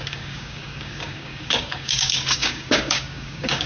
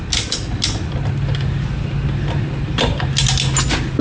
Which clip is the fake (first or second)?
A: first